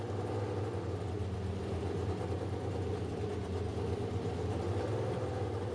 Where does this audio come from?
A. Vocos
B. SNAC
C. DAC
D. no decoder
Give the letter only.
D